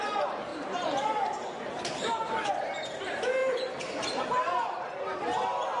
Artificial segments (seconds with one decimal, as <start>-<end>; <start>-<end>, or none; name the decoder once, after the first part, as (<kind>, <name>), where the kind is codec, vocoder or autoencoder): 0.0-5.8 (vocoder, BigVGAN v2)